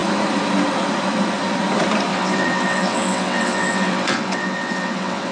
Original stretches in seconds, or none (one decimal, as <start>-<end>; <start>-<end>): 0.0-2.1